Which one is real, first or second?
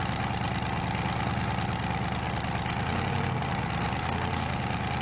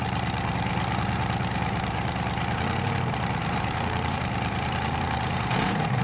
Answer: first